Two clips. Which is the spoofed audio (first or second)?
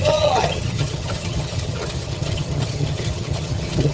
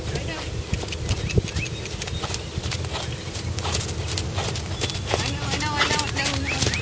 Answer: first